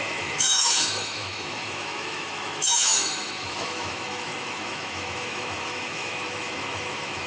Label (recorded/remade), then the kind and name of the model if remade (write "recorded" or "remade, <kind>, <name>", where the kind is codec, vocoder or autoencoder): remade, autoencoder, DAC-VAE